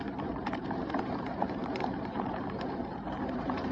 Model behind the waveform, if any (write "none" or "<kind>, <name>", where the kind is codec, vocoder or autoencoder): vocoder, BigVGAN v2